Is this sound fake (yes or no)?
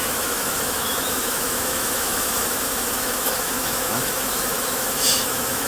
yes